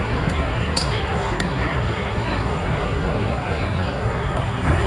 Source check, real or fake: fake